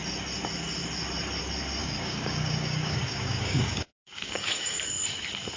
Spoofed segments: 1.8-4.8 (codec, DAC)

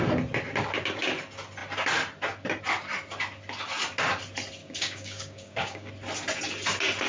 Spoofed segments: 4.6-5.9 (codec, DAC)

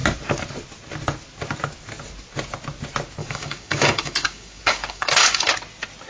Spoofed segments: 3.2-5.5 (codec, DAC)